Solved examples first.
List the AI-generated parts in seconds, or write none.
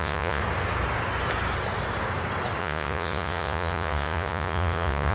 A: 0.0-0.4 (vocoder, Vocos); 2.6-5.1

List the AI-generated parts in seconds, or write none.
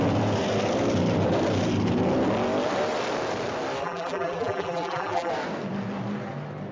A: 3.8-5.3 (vocoder, BigVGAN v2)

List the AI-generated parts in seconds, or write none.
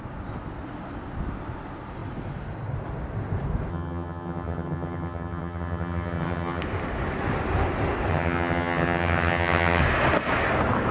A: 3.7-6.6 (vocoder, HiFi-GAN); 8.1-9.8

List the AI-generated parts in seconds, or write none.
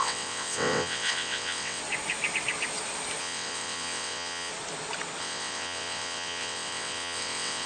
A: 0.0-1.8 (vocoder, WaveNeXt); 3.2-4.5; 5.2-7.7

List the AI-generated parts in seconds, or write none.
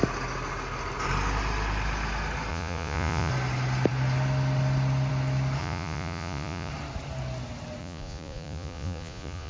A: 2.5-3.3 (vocoder, Vocos); 5.6-6.7; 7.8-9.5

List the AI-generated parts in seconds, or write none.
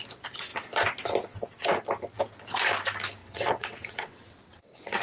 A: 3.2-5.0 (vocoder, WaveNeXt)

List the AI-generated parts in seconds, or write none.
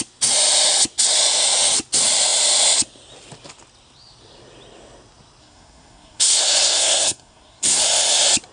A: 5.4-7.8 (codec, SNAC)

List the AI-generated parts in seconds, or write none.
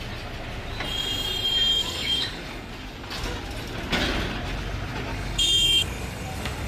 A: 1.7-2.7 (codec, DAC); 5.1-6.7